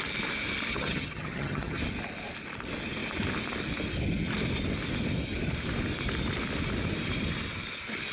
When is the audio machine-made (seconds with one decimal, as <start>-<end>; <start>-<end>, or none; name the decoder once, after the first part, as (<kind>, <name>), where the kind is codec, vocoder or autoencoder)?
0.7-1.8 (vocoder, HiFi-GAN)